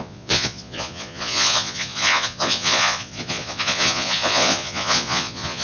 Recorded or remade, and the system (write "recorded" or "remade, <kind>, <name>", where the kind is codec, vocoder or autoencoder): remade, vocoder, Vocos